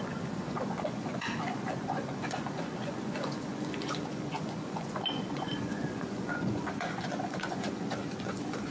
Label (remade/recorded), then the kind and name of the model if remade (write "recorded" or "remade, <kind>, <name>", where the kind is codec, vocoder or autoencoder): remade, vocoder, Vocos